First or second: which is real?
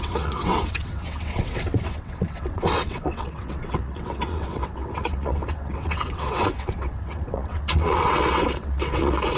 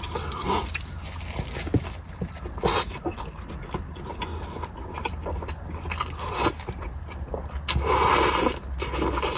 second